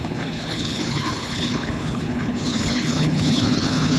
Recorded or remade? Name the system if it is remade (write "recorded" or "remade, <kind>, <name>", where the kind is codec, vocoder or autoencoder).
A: remade, codec, HILCodec